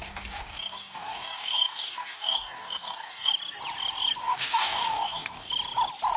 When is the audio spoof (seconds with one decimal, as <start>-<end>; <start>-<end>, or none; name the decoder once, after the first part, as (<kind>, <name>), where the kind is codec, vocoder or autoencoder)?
0.0-3.3 (codec, DAC); 4.2-5.5